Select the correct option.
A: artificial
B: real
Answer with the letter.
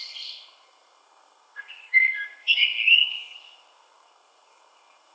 A